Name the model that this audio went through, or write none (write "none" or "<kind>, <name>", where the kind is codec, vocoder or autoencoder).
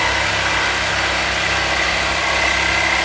none